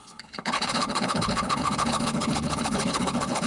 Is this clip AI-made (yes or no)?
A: yes